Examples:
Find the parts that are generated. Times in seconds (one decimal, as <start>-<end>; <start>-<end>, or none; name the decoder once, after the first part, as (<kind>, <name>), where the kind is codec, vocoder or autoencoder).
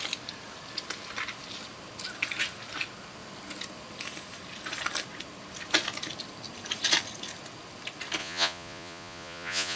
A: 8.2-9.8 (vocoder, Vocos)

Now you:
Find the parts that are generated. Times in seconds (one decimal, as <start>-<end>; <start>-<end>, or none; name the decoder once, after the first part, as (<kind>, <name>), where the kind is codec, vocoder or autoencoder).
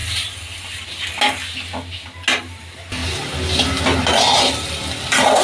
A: none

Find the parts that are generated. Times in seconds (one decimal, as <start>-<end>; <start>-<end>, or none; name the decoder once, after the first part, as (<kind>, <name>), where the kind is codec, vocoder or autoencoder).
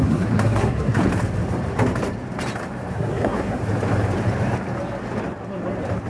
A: 0.0-1.0 (codec, SNAC); 2.9-3.6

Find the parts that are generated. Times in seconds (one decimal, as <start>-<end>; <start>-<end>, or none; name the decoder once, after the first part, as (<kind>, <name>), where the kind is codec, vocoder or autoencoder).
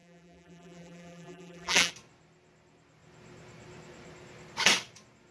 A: 0.0-1.9 (vocoder, BigVGAN v2)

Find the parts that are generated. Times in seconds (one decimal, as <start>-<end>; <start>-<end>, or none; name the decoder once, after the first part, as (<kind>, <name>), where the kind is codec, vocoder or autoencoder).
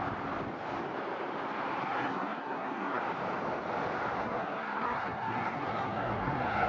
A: 1.8-3.0 (codec, SNAC); 4.2-6.7